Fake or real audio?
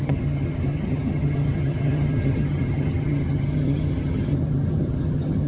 fake